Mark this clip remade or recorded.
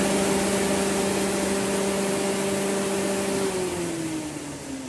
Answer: recorded